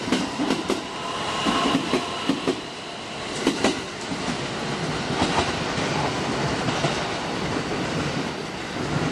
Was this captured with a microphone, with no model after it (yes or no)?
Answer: no